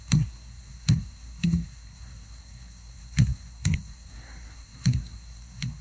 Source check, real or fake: fake